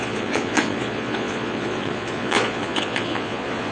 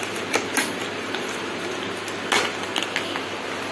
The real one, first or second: second